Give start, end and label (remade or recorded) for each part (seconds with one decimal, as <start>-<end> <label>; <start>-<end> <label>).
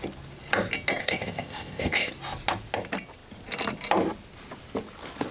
0.0-1.0 recorded; 1.0-2.1 remade; 2.1-5.3 recorded